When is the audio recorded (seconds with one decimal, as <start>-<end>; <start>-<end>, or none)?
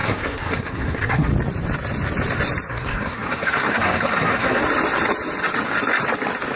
1.3-2.7; 4.6-6.6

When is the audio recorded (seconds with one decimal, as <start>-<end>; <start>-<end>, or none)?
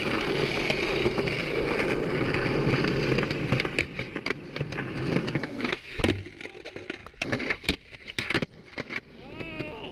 0.0-5.2; 6.0-9.9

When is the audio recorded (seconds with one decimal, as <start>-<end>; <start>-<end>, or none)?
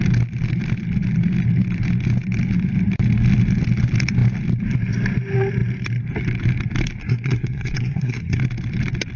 0.0-7.0; 8.4-9.2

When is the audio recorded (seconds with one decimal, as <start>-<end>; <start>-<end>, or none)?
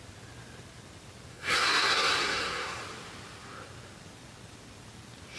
0.0-1.3; 2.8-5.4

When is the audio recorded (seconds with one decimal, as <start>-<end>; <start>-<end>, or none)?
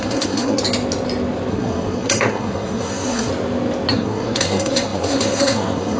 0.6-1.5; 3.3-3.9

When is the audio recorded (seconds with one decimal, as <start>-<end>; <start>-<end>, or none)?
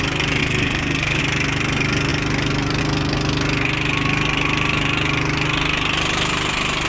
0.0-0.4; 1.2-6.9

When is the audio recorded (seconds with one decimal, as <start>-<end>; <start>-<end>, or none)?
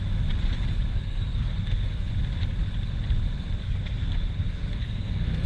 0.0-0.9; 2.1-3.6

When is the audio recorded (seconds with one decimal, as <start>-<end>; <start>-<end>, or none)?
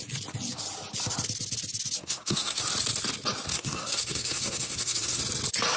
0.0-2.0; 2.6-3.5; 5.2-5.8